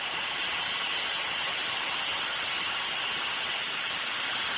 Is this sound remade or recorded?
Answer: recorded